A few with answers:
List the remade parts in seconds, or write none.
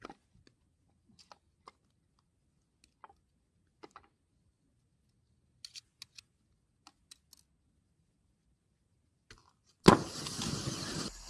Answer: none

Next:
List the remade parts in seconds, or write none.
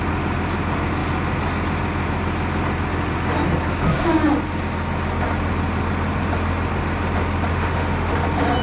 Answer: 7.5-8.1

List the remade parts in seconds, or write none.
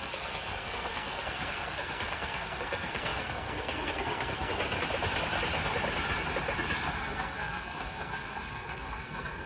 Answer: 0.0-4.5; 7.0-9.5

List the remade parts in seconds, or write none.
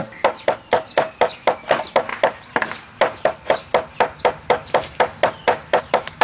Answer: none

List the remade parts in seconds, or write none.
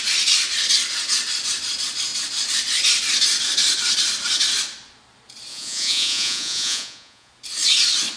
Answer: 5.5-7.3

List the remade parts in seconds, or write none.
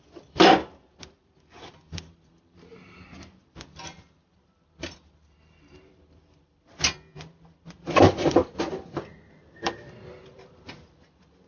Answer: 0.0-8.4; 9.3-11.5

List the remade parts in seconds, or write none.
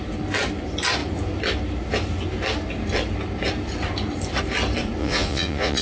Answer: 5.0-5.8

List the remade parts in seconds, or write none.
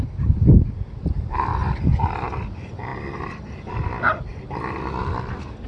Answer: none